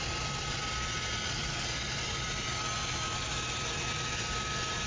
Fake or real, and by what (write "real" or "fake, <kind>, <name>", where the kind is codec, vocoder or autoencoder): real